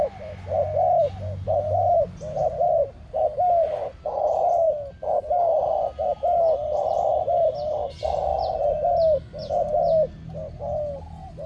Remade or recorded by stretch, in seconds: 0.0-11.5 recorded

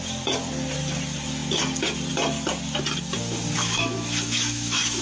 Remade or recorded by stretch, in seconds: 0.0-3.6 recorded; 3.6-5.0 remade

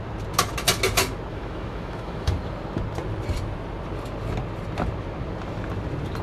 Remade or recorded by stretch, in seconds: 0.0-1.3 recorded; 1.3-2.3 remade; 2.3-6.2 recorded

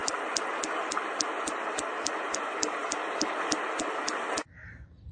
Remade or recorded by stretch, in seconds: 0.0-5.1 recorded

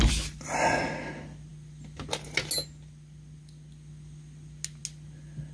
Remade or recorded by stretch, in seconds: 0.0-5.5 recorded

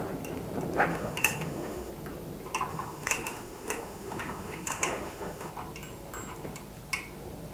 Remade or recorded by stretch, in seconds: 0.0-0.9 recorded; 0.9-1.9 remade; 1.9-2.7 recorded; 2.7-5.5 remade; 5.5-7.5 recorded

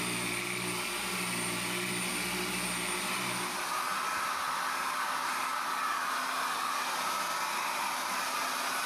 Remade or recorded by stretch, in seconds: 0.0-8.9 recorded